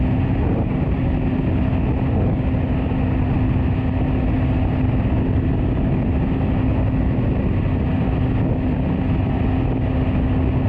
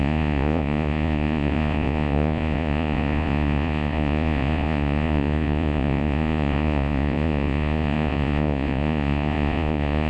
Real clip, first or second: first